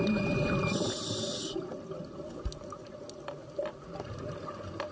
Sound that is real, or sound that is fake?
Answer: real